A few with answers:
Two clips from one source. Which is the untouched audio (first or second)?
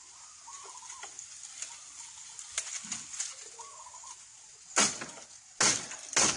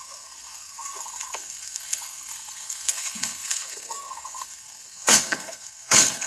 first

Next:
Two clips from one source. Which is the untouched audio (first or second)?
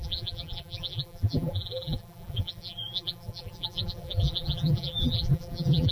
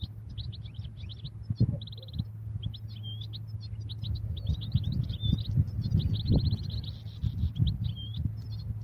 second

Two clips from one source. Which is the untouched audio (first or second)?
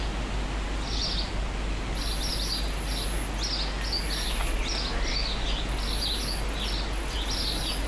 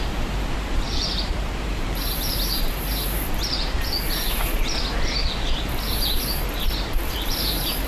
first